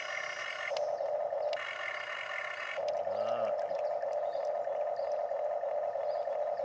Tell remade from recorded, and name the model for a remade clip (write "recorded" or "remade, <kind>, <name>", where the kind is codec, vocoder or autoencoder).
recorded